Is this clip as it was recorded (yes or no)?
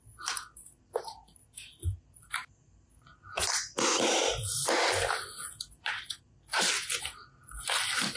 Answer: yes